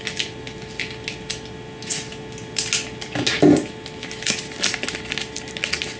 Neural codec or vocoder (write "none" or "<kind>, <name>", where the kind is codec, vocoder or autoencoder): none